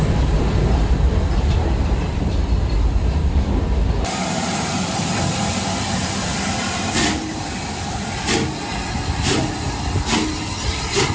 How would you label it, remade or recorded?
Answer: remade